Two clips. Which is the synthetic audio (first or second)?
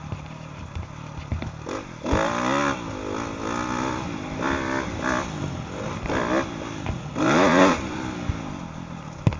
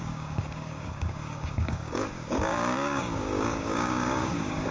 second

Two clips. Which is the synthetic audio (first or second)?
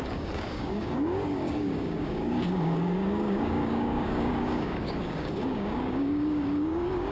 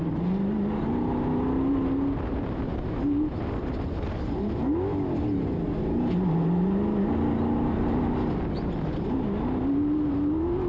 first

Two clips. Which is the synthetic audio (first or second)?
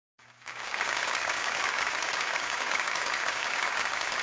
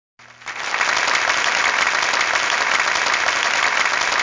first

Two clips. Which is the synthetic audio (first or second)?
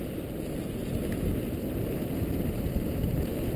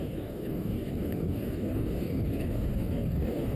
second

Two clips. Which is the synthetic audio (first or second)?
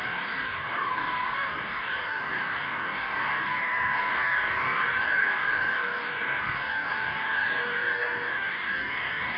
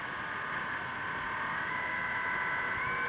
first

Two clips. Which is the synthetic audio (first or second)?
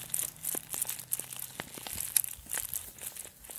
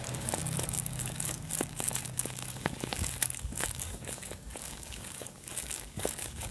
second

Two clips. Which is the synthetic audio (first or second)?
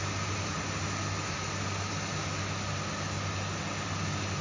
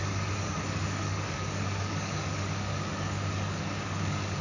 second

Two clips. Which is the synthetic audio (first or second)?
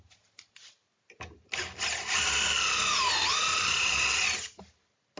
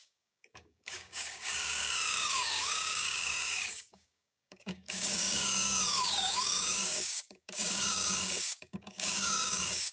second